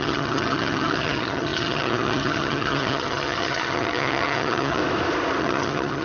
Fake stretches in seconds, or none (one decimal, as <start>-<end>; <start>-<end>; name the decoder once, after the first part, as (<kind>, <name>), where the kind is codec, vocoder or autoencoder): 0.0-4.8 (vocoder, HiFi-GAN); 5.4-6.0